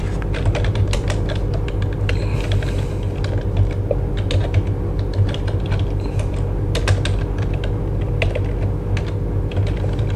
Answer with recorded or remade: recorded